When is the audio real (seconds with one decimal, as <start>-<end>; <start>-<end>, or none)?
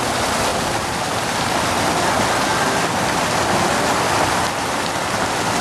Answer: 0.0-5.6